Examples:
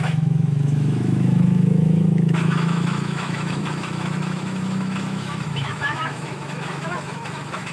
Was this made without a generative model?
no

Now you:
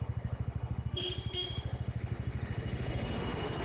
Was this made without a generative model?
no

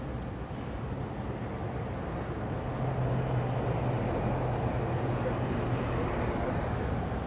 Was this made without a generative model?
yes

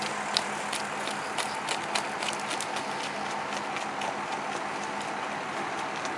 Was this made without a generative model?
yes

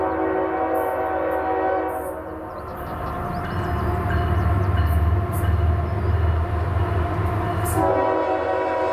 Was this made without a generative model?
yes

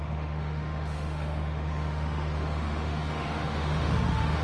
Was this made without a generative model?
no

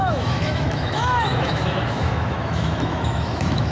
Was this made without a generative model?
no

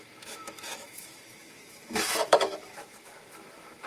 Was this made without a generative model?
no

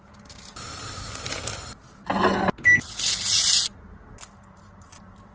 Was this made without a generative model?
yes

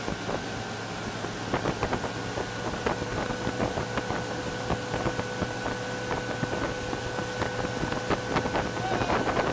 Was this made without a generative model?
yes